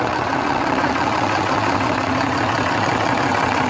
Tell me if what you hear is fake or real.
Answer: fake